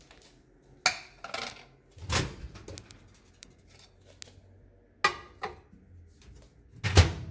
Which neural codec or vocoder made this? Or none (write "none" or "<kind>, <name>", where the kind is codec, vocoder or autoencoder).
none